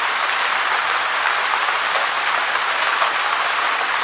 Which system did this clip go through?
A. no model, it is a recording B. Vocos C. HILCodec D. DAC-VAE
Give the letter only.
A